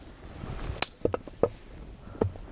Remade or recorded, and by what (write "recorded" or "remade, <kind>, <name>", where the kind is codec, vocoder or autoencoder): recorded